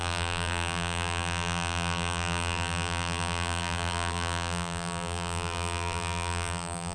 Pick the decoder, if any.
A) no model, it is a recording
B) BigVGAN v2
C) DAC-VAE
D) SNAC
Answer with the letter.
B